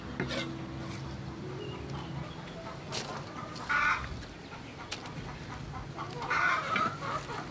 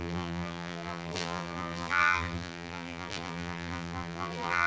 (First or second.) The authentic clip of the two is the first